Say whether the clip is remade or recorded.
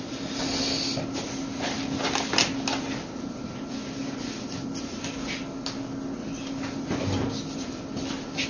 recorded